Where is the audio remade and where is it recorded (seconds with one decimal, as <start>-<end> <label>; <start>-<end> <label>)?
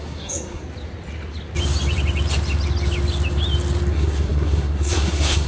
0.0-0.6 remade; 0.6-3.9 recorded; 3.9-5.5 remade